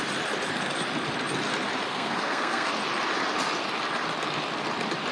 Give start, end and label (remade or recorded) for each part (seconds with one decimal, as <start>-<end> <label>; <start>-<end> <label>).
0.0-1.9 recorded; 1.9-2.7 remade; 2.7-5.1 recorded